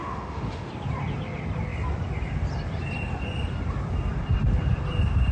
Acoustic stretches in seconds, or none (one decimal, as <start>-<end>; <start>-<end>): 0.7-5.3